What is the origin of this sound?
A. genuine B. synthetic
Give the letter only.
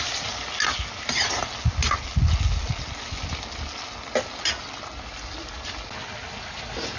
A